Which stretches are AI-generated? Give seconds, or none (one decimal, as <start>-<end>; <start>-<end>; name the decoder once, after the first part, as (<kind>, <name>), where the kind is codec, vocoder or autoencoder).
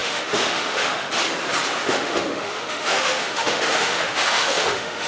0.0-1.1 (autoencoder, DAC-VAE); 1.8-5.1